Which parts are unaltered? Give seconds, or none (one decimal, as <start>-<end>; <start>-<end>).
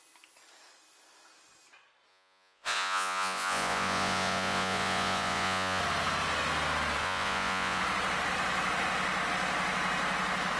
0.0-2.1; 5.8-7.0; 7.8-10.6